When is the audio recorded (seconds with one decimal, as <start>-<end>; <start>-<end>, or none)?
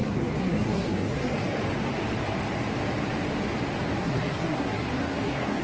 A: 1.4-4.0